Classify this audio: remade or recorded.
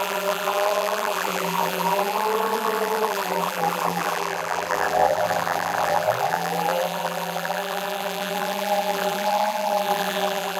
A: remade